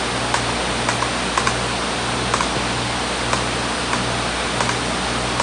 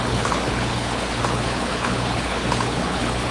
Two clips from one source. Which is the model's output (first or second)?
second